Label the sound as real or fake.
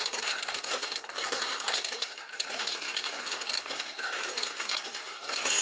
fake